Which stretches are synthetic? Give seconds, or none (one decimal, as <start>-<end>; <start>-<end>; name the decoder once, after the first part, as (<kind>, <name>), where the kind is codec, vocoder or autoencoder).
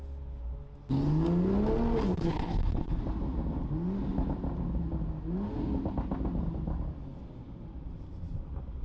2.1-3.0 (codec, HILCodec)